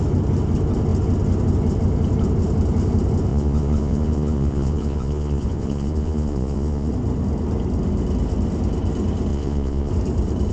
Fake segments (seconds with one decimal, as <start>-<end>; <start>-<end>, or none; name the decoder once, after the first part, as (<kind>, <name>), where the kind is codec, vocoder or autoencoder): 3.3-6.9 (vocoder, Vocos); 9.3-9.9